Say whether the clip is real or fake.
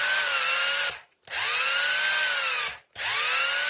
real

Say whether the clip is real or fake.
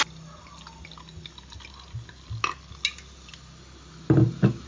real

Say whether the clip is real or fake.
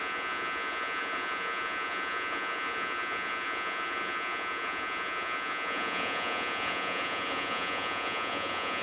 fake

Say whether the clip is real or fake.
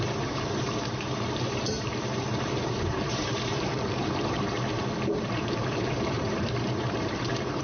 fake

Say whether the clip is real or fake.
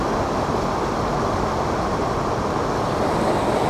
real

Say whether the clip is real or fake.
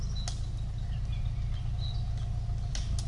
real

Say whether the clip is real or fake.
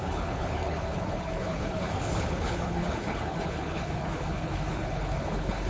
fake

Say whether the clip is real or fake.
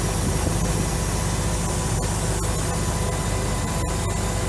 real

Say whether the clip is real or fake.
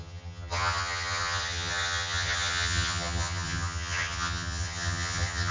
fake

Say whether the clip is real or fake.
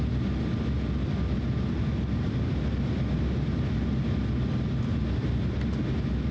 real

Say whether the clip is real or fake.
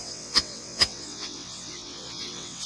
fake